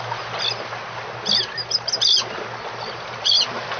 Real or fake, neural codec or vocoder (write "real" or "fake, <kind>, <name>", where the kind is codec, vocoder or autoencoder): real